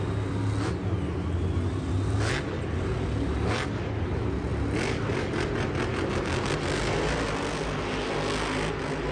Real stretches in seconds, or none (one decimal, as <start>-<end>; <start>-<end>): 0.0-9.1